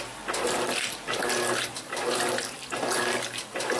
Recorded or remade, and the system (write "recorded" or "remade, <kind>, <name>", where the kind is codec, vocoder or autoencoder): recorded